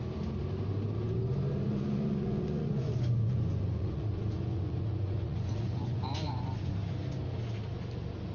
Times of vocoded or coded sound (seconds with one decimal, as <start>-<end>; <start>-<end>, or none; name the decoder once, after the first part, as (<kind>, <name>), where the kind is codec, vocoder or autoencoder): 1.7-6.7 (vocoder, Vocos)